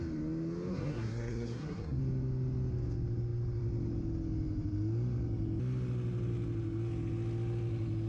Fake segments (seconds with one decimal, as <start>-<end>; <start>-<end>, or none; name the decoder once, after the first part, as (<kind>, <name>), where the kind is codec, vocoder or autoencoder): 0.7-2.0 (codec, SNAC)